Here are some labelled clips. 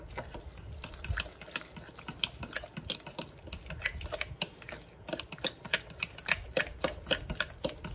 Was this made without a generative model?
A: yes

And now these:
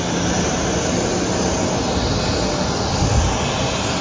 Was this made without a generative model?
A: yes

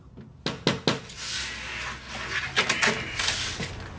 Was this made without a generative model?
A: yes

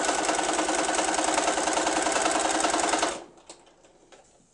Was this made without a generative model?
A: yes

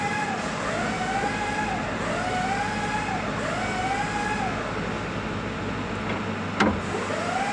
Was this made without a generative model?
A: yes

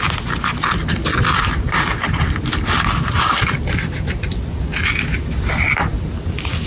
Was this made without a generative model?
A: yes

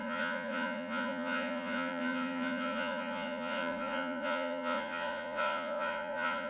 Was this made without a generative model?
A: no